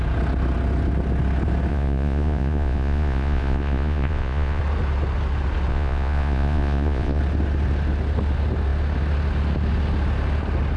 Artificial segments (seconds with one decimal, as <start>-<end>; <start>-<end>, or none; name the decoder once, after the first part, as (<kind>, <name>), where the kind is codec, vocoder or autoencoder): 1.7-4.6 (vocoder, Vocos); 5.7-7.2

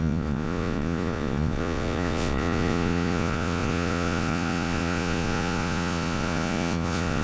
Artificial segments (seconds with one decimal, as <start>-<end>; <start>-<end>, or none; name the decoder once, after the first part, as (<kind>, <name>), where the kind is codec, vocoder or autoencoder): 0.0-7.2 (vocoder, Vocos)

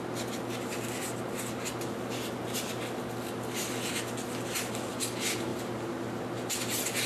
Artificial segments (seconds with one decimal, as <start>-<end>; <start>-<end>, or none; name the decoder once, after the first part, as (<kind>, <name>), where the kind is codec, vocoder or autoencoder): 5.5-6.2 (vocoder, BigVGAN v2)

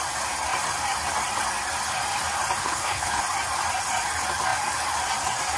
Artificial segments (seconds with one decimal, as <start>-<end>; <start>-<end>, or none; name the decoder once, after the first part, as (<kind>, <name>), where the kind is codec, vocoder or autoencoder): 2.6-3.2 (codec, HILCodec)

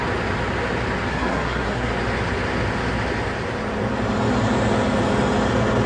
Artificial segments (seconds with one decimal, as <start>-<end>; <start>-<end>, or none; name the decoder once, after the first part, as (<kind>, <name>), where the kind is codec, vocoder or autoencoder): 1.1-1.9 (codec, SNAC)

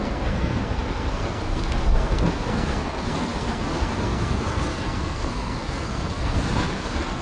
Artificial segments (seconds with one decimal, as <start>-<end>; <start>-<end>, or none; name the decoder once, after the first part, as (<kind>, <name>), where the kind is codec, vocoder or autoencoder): 0.0-7.2 (codec, SNAC)

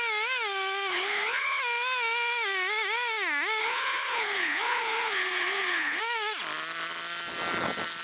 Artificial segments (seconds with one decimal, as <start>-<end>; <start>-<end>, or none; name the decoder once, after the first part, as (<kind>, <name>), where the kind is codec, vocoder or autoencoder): 0.9-1.6 (codec, HILCodec); 3.6-6.0